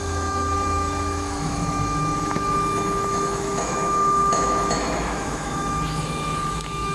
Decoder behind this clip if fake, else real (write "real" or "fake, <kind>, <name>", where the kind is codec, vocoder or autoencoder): fake, autoencoder, DAC-VAE